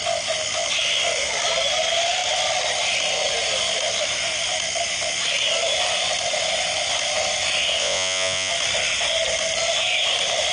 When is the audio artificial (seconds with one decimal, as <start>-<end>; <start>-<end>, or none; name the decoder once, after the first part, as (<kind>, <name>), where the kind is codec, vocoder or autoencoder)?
7.8-8.5 (vocoder, Vocos)